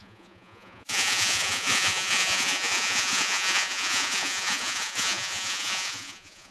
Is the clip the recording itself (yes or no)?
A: no